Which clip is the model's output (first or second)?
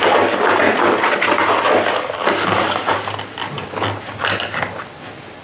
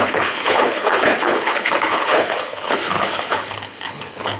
second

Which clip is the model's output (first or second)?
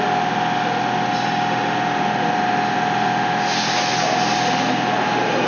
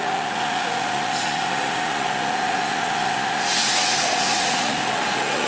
second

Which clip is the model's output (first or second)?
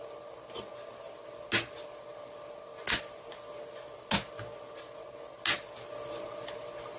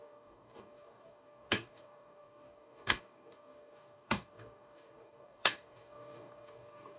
second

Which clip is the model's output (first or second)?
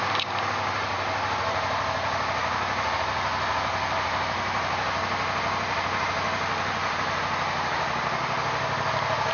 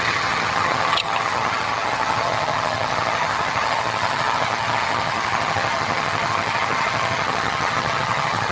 second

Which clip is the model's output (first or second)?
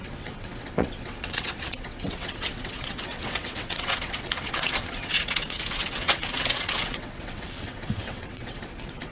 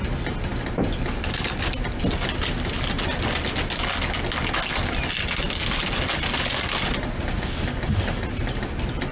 first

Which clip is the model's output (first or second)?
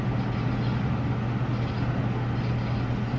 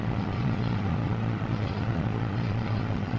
second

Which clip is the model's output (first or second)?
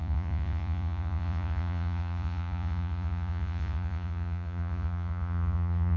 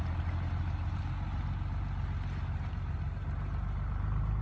first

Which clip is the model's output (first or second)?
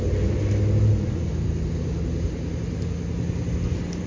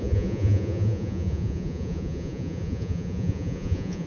second